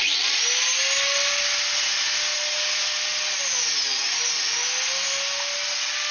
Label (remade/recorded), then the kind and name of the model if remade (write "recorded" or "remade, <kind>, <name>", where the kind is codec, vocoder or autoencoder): recorded